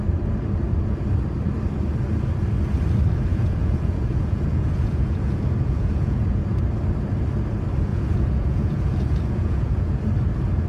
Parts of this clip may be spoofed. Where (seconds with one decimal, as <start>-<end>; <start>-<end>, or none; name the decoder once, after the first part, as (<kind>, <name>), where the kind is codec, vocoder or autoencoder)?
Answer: 3.3-6.6 (vocoder, Vocos); 7.9-10.0